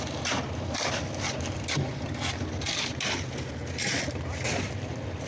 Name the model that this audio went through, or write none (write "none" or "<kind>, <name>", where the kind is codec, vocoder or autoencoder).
none